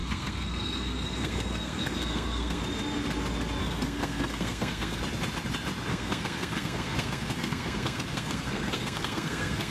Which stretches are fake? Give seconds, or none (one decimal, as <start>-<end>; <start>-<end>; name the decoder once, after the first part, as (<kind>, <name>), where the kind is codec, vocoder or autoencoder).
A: 0.0-2.6 (codec, SNAC); 3.6-5.0; 5.9-9.7